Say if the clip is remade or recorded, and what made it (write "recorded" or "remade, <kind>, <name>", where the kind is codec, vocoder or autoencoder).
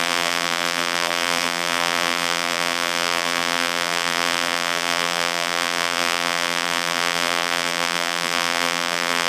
remade, vocoder, BigVGAN v2